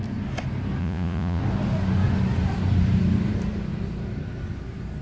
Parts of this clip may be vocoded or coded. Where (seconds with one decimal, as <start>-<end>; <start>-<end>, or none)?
0.8-1.4